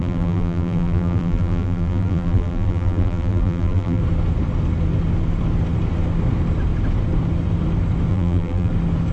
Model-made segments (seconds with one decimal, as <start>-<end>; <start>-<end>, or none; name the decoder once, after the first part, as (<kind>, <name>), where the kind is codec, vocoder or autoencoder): 0.0-4.0 (vocoder, BigVGAN v2); 8.1-8.7